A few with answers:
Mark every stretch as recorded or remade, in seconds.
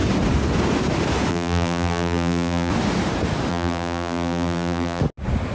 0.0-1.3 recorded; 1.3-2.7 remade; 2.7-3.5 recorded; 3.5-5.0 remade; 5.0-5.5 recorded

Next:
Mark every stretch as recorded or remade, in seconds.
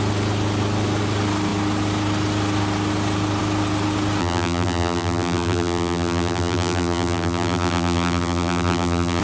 0.0-4.2 recorded; 4.2-9.2 remade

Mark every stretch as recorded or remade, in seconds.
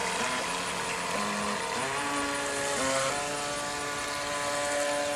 0.0-5.2 recorded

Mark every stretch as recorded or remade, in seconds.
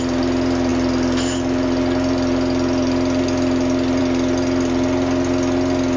0.0-6.0 recorded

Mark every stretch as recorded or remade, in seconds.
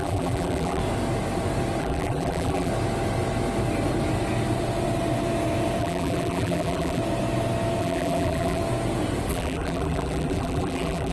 0.0-0.8 remade; 0.8-1.8 recorded; 1.8-2.7 remade; 2.7-5.8 recorded; 5.8-7.0 remade; 7.0-7.8 recorded; 7.8-8.6 remade; 8.6-9.3 recorded; 9.3-11.1 remade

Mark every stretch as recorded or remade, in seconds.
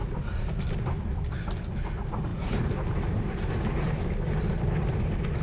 0.0-2.3 recorded; 2.3-3.5 remade; 3.5-5.4 recorded